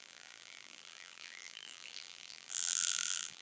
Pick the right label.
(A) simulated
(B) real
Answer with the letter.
A